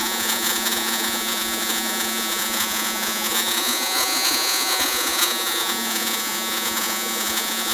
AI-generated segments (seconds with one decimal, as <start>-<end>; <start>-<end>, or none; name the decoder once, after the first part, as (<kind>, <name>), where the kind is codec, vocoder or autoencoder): 0.0-7.7 (vocoder, Vocos)